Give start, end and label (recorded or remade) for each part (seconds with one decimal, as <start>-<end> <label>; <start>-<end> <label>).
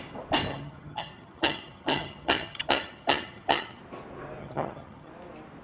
0.0-0.5 recorded; 0.5-3.8 remade; 3.8-4.4 recorded; 4.4-5.1 remade; 5.1-5.6 recorded